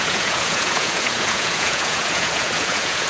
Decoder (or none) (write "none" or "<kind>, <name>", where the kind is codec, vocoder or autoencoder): vocoder, Vocos